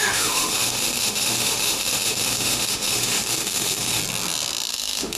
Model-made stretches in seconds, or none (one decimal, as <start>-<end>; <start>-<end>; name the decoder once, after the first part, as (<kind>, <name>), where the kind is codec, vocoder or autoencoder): 0.0-4.0 (autoencoder, DAC-VAE); 4.7-5.2

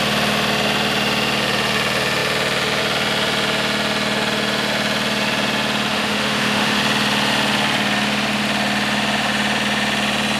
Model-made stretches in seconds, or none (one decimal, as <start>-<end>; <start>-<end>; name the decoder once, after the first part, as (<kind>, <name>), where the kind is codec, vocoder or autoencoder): 5.9-6.8 (autoencoder, DAC-VAE)

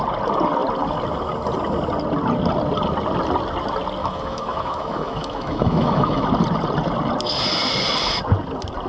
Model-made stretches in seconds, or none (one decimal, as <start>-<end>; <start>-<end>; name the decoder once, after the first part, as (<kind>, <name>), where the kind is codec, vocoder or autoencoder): 4.0-6.2 (autoencoder, DAC-VAE)

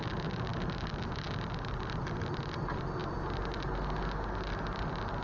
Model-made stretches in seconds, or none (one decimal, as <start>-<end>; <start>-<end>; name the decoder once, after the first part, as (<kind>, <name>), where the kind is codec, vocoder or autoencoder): none

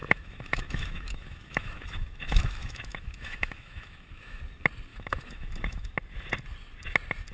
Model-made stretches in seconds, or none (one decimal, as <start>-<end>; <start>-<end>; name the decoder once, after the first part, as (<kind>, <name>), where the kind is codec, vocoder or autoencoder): 0.0-4.4 (autoencoder, DAC-VAE); 4.9-5.9

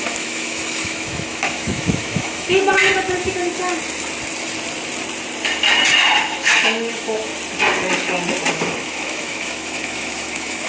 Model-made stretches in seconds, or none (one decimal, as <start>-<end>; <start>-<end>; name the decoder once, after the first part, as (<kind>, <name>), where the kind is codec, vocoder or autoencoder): 0.0-2.8 (autoencoder, DAC-VAE); 6.2-7.3; 8.5-10.7

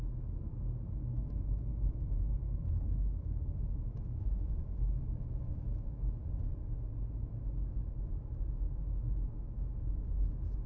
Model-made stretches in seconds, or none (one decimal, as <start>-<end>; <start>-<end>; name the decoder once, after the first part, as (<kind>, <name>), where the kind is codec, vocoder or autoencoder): 0.0-6.2 (autoencoder, DAC-VAE); 7.1-10.7